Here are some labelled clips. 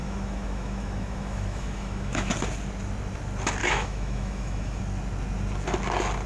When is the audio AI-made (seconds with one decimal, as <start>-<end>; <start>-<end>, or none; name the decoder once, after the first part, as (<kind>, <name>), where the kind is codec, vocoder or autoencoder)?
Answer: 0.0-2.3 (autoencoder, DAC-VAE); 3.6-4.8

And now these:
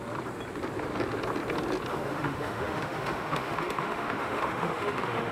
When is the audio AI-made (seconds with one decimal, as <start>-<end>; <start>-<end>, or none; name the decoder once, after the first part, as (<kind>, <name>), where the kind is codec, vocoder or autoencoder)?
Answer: 1.9-5.3 (autoencoder, DAC-VAE)

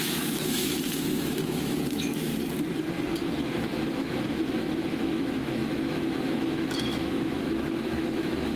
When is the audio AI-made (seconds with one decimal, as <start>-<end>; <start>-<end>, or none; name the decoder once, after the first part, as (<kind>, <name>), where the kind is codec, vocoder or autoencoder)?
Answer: 0.0-2.3 (autoencoder, DAC-VAE); 3.2-8.6

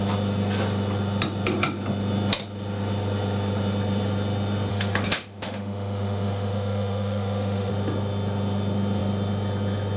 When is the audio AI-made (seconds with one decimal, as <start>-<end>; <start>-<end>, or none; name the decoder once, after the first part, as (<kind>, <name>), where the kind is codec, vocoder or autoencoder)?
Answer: 4.7-7.7 (autoencoder, DAC-VAE)

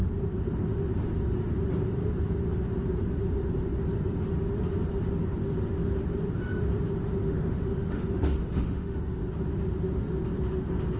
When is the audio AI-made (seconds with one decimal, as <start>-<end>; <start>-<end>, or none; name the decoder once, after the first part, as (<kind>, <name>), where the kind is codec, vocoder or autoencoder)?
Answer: 7.2-9.2 (autoencoder, DAC-VAE)